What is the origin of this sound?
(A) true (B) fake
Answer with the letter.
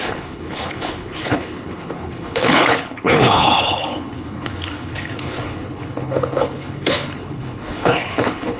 B